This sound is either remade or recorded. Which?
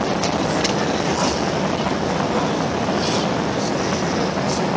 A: recorded